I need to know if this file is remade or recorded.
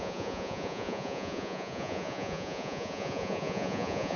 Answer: remade